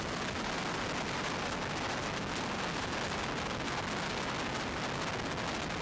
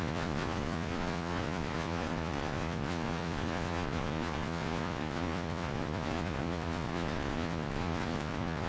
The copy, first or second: second